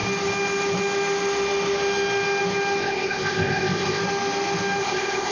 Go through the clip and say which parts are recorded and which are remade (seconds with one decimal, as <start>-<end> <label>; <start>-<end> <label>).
0.0-2.8 recorded; 2.8-4.0 remade; 4.0-4.8 recorded; 4.8-5.3 remade